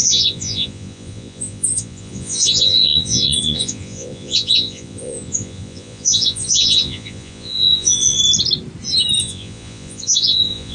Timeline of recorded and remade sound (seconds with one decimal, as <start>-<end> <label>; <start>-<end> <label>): 0.0-8.2 remade; 8.2-9.2 recorded; 9.2-10.7 remade